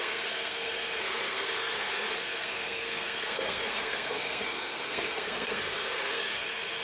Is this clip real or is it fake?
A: fake